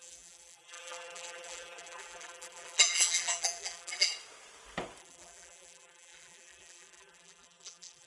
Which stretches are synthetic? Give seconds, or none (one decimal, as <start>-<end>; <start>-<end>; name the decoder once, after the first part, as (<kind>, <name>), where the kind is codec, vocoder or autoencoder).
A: 0.0-4.1 (vocoder, BigVGAN v2); 5.0-8.1